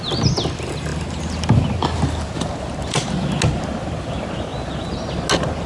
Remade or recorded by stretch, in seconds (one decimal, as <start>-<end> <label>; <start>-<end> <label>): 0.0-5.7 recorded